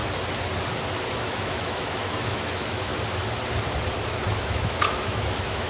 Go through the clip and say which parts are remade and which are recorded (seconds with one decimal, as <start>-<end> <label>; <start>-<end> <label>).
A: 0.0-1.1 recorded; 1.1-2.9 remade; 2.9-4.3 recorded; 4.3-5.7 remade